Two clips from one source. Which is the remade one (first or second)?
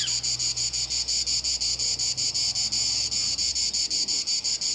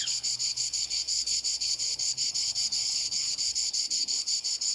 second